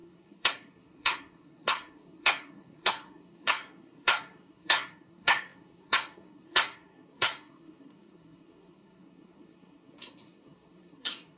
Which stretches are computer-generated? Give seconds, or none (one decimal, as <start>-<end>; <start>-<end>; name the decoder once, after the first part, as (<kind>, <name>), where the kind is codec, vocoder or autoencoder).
0.0-11.4 (codec, SNAC)